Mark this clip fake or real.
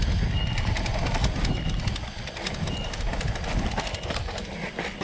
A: real